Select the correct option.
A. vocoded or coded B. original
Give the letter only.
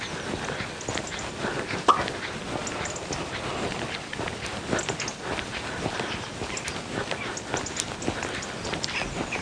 B